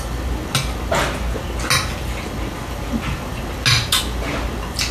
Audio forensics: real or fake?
real